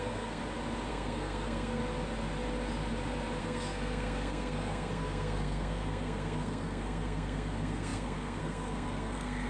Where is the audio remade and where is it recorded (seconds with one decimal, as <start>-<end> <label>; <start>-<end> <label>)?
0.0-0.4 remade; 0.4-0.9 recorded; 0.9-1.8 remade; 1.8-3.4 recorded; 3.4-9.5 remade

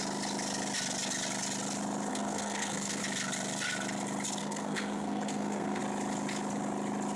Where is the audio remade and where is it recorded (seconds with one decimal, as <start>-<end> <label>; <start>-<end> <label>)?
0.0-2.1 recorded; 2.1-3.0 remade; 3.0-4.4 recorded; 4.4-5.8 remade; 5.8-7.2 recorded

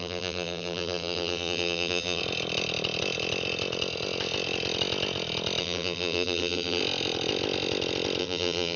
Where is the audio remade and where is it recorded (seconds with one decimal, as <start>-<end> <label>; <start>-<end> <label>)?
0.0-2.2 remade; 2.2-5.6 recorded; 5.6-6.8 remade; 6.8-8.2 recorded; 8.2-8.8 remade

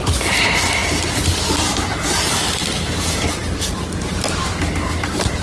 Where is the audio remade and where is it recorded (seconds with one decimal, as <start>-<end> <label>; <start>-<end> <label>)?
0.0-5.4 recorded

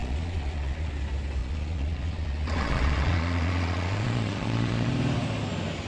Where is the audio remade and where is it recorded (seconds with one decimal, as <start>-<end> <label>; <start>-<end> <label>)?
0.0-0.9 remade; 0.9-1.4 recorded; 1.4-4.9 remade; 4.9-5.9 recorded

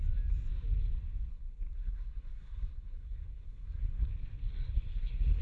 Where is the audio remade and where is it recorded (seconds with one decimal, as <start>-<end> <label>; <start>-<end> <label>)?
0.0-1.3 recorded; 1.3-4.1 remade; 4.1-4.6 recorded; 4.6-5.4 remade

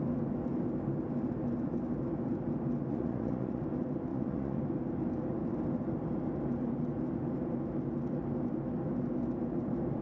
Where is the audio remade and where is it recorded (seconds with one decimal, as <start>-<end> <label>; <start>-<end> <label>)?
0.0-2.9 recorded; 2.9-3.6 remade; 3.6-4.1 recorded; 4.1-4.6 remade; 4.6-10.0 recorded

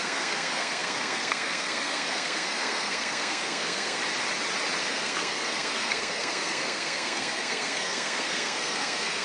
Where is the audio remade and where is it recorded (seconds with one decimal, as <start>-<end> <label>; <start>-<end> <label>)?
0.0-4.0 remade; 4.0-4.8 recorded; 4.8-9.2 remade